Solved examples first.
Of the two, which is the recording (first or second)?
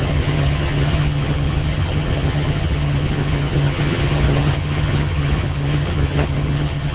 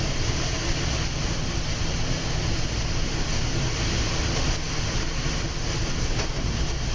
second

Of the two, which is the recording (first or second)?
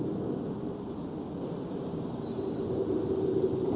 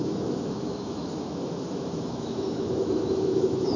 first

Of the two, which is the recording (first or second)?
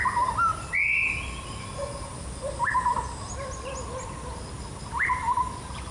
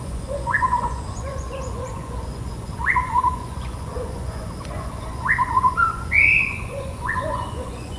first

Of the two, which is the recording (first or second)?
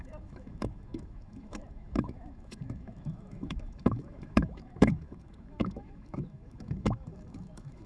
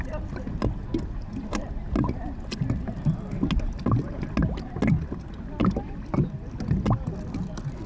second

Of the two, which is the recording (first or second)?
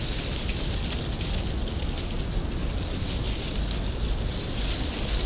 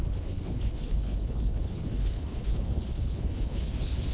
first